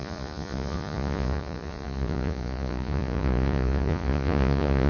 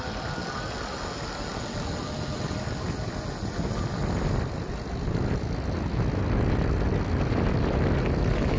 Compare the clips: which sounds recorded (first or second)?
second